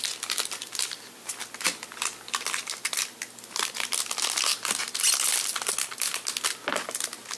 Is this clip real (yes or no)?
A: yes